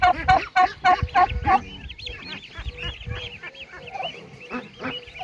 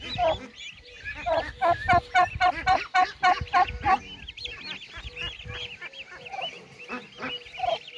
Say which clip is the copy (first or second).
first